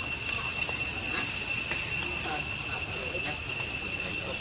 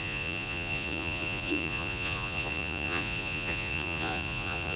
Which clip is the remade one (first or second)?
second